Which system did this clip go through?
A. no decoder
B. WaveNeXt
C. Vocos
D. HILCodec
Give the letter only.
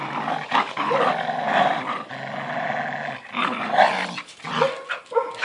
A